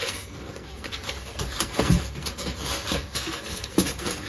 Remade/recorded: remade